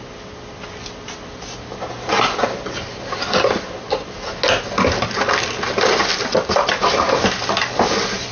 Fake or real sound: real